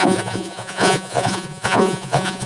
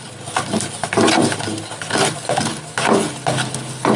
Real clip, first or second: second